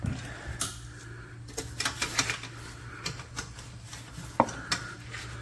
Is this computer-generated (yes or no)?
no